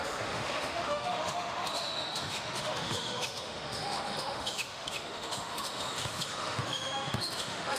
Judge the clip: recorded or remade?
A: remade